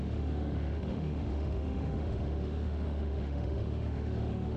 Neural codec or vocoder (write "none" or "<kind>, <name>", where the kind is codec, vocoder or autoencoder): autoencoder, DAC-VAE